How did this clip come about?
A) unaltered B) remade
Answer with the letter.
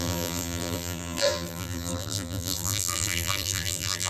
B